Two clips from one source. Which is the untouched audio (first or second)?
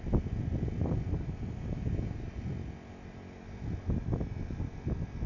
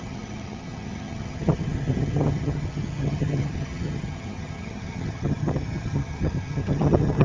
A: first